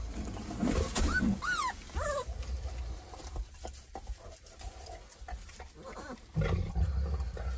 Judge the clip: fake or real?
real